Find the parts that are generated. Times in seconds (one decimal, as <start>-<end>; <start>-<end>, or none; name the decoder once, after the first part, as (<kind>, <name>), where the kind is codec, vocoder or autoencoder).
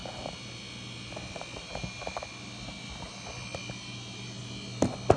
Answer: none